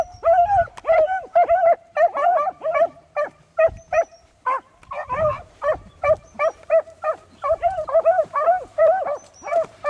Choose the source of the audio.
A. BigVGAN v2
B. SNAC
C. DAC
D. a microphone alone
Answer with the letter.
A